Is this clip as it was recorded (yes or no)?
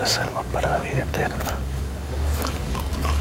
no